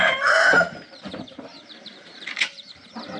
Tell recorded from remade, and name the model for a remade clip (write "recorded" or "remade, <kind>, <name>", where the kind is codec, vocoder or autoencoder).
remade, vocoder, BigVGAN v2